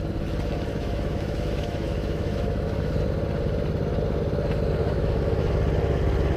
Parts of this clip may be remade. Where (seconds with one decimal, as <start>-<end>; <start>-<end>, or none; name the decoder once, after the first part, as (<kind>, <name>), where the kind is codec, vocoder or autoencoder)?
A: 0.7-3.0 (autoencoder, DAC-VAE); 4.8-5.5